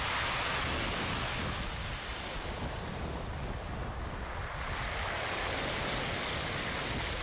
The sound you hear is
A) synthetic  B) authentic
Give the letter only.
B